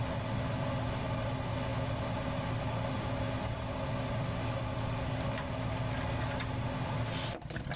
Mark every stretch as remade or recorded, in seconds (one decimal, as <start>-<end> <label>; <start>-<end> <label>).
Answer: 0.0-7.8 recorded